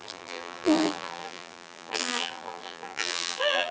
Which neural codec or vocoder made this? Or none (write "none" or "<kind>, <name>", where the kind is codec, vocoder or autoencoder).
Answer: vocoder, BigVGAN v2